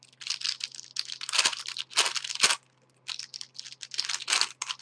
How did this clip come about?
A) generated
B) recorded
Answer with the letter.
B